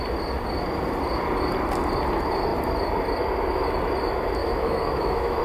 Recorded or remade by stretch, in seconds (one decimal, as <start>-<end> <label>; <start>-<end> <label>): 0.0-4.4 recorded; 4.4-5.4 remade